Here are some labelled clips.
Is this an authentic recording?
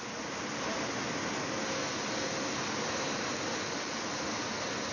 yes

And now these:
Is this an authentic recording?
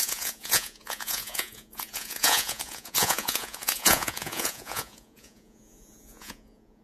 no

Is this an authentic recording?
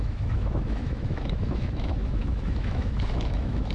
no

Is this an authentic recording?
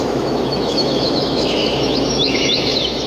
no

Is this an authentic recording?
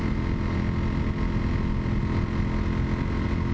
yes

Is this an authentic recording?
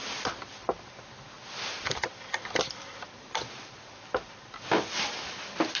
yes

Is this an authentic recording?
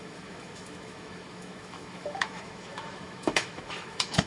no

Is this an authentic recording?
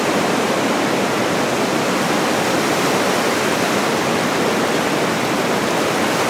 yes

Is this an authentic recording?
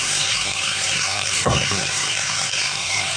no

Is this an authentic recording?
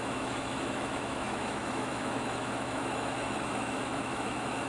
no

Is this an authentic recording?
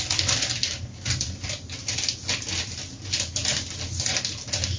yes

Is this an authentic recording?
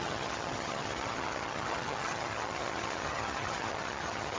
no